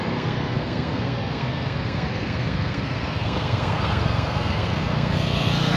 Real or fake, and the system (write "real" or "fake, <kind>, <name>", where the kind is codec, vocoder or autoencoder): fake, codec, SNAC